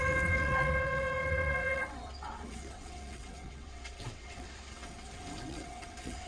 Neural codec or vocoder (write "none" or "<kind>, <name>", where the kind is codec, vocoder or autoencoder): vocoder, WaveNeXt